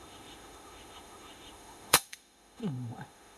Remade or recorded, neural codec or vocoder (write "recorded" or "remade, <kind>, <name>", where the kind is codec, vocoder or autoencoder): remade, autoencoder, DAC-VAE